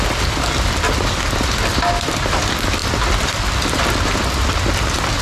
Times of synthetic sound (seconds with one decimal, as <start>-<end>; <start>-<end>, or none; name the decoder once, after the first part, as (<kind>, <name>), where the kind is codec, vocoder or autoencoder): none